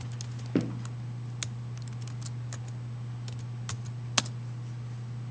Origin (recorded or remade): recorded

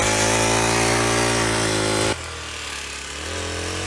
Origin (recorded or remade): recorded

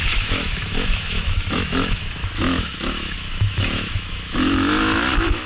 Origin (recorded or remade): remade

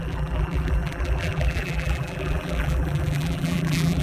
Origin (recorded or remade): remade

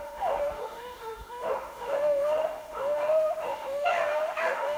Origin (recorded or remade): remade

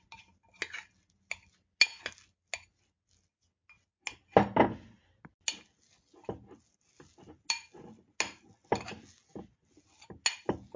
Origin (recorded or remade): recorded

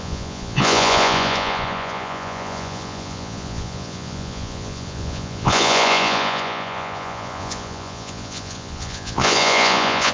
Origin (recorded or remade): remade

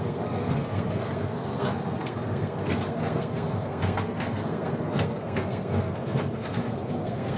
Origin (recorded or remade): remade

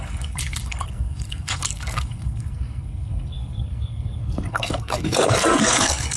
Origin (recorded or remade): remade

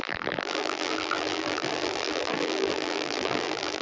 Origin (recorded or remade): remade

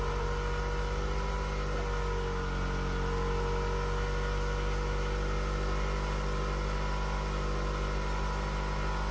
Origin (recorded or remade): recorded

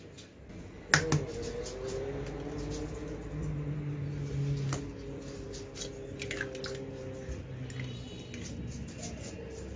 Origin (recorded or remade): recorded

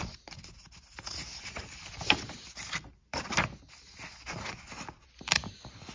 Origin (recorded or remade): recorded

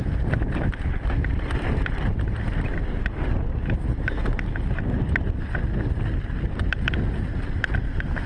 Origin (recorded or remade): recorded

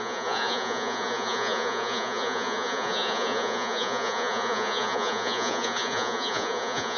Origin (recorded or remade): remade